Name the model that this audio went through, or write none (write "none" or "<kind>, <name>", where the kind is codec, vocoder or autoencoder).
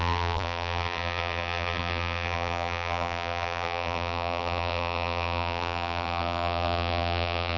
vocoder, BigVGAN v2